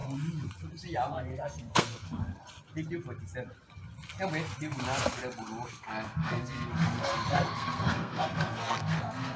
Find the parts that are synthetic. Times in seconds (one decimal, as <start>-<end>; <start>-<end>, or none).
1.1-2.4; 5.7-9.4